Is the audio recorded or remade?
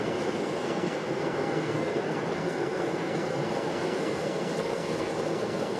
remade